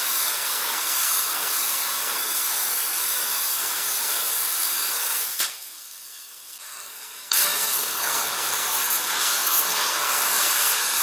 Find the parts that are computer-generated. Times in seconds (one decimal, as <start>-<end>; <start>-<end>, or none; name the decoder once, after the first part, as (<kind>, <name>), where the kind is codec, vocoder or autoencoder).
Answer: 0.0-11.0 (codec, SNAC)